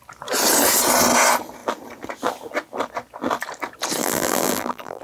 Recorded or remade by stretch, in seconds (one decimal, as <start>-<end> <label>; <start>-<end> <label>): 0.0-4.0 recorded; 4.0-5.0 remade